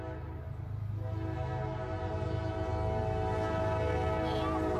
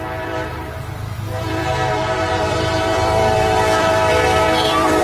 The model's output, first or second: second